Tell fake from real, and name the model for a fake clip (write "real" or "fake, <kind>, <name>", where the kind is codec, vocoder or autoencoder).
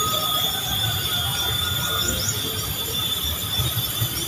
fake, vocoder, BigVGAN v2